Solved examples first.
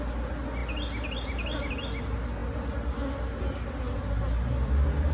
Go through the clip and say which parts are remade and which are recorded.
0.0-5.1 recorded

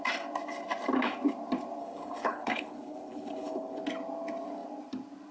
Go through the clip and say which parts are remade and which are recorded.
0.0-1.8 recorded; 1.8-3.8 remade; 3.8-5.3 recorded

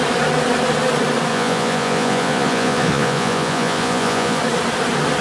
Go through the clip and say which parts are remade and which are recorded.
0.0-1.3 recorded; 1.3-4.4 remade; 4.4-5.2 recorded

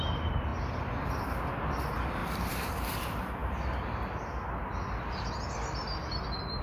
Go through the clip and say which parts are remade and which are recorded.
0.0-2.2 recorded; 2.2-2.7 remade; 2.7-6.6 recorded